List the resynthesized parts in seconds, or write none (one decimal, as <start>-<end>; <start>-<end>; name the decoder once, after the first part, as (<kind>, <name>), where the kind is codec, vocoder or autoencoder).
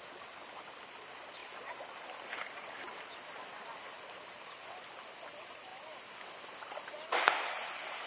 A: none